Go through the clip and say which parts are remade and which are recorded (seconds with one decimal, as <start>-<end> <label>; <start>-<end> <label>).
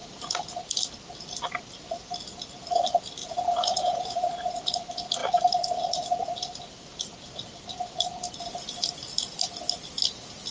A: 0.0-3.2 recorded; 3.2-4.3 remade; 4.3-10.5 recorded